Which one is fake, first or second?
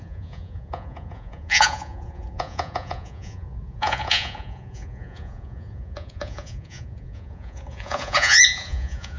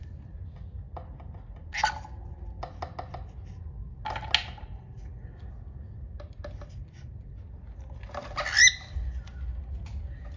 first